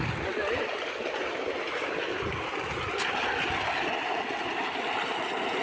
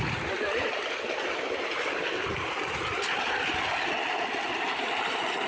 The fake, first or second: second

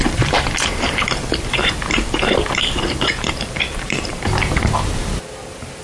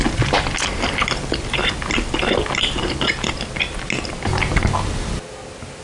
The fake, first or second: first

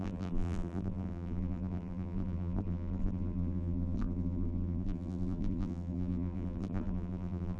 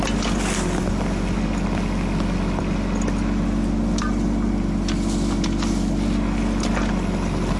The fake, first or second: first